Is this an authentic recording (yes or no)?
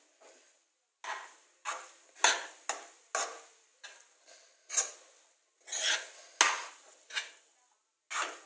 yes